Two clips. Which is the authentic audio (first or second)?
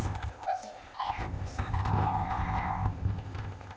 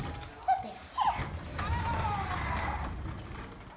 second